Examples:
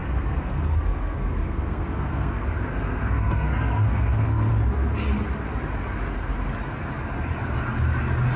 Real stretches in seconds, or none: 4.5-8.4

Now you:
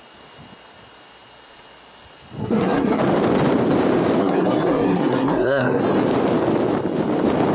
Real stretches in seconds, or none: 0.0-2.4; 3.0-4.2; 5.8-7.5